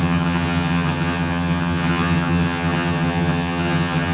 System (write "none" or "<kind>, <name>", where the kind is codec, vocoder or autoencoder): vocoder, HiFi-GAN